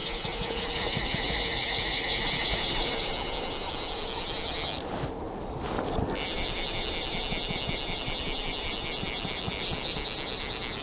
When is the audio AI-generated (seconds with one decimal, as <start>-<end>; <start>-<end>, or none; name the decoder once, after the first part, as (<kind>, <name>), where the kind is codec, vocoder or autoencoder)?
0.0-3.1 (vocoder, Vocos)